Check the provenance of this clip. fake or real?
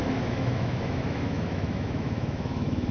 fake